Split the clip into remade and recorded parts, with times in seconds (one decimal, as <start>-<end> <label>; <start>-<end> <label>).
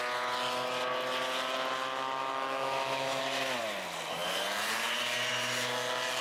0.0-2.3 recorded; 2.3-3.2 remade; 3.2-6.2 recorded